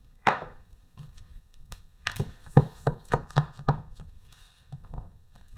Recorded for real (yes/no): no